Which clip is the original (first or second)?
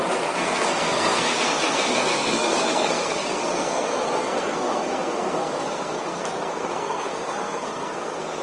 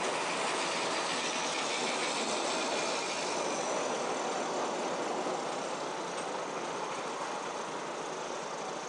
second